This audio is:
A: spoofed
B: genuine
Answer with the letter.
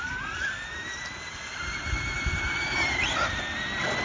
B